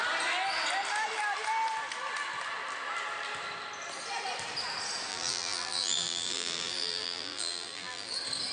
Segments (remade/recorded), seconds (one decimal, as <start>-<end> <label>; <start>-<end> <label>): 0.0-5.1 recorded; 5.1-8.1 remade; 8.1-8.5 recorded

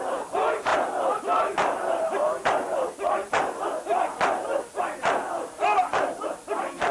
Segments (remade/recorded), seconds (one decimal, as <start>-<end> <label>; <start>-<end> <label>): 0.0-5.9 recorded; 5.9-6.9 remade

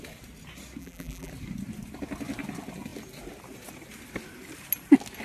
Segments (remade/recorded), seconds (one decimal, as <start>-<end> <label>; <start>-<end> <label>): 0.0-0.8 recorded; 0.8-1.3 remade; 1.3-5.2 recorded

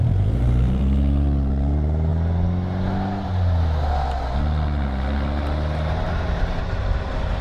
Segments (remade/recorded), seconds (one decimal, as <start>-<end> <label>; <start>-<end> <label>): 0.0-2.1 remade; 2.1-5.9 recorded; 5.9-7.4 remade

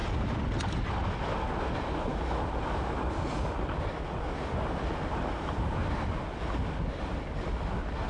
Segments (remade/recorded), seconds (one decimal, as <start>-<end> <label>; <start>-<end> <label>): 0.0-1.2 remade; 1.2-8.1 recorded

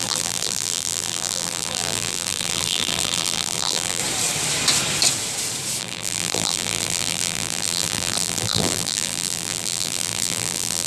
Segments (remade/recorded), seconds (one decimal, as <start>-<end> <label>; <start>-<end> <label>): 0.0-4.0 remade; 4.0-5.8 recorded; 5.8-10.9 remade

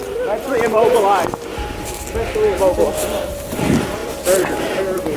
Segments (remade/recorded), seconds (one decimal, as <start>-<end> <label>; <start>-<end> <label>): 0.0-5.2 recorded